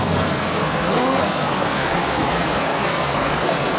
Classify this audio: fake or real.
fake